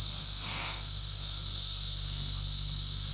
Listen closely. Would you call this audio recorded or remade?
remade